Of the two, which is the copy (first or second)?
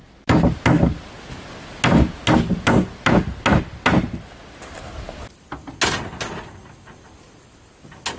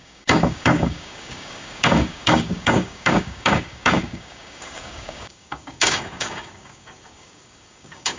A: second